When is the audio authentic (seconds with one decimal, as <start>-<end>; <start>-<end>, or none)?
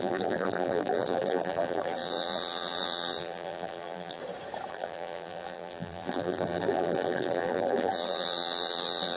4.2-4.7